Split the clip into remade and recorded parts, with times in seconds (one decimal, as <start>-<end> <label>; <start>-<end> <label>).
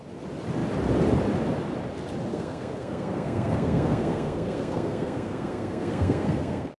0.0-2.3 recorded; 2.3-6.8 remade